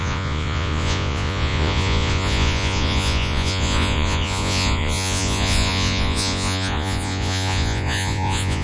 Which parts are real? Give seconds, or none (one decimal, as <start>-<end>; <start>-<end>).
none